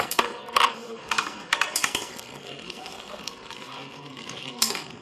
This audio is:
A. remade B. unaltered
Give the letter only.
A